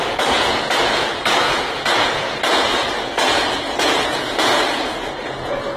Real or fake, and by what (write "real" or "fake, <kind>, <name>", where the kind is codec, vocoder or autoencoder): fake, vocoder, Vocos